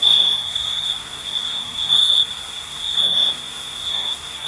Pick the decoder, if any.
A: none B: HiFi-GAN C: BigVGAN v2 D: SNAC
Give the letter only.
D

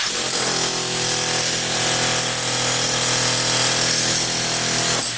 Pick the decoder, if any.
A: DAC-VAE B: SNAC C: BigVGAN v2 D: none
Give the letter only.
D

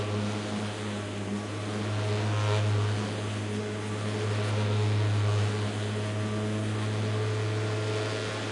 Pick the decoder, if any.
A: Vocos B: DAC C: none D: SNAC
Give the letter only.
C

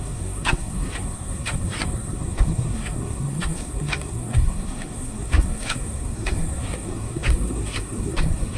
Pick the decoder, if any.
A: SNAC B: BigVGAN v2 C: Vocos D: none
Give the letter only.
A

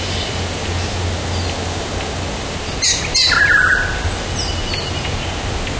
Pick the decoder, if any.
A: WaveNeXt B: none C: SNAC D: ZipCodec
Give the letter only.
B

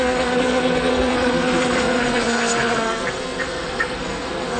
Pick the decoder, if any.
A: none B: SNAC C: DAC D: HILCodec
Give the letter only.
B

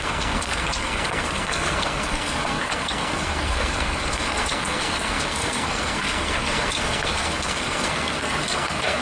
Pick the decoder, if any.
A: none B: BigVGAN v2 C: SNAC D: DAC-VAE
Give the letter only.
C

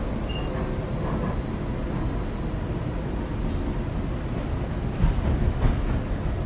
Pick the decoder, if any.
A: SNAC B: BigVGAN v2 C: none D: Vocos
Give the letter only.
C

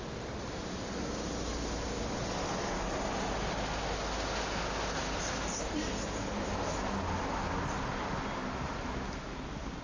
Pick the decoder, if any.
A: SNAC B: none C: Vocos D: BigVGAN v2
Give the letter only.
B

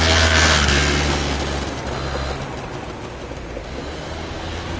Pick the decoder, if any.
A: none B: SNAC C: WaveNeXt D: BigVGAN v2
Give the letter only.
A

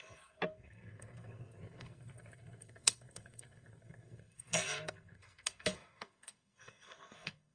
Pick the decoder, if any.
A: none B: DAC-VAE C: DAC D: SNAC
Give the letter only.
D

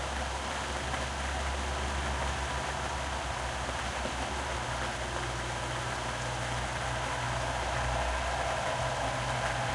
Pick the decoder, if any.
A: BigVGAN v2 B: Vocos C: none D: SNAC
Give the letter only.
C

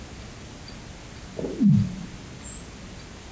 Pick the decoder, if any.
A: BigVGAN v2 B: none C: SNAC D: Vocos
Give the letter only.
B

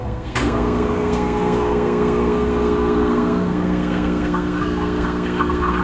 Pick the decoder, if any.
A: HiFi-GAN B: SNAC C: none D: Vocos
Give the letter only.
B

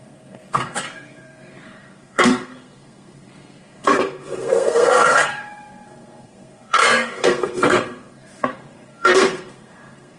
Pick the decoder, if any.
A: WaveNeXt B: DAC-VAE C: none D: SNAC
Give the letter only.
D